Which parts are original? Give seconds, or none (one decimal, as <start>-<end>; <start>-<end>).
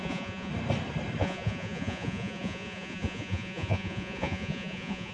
0.5-1.2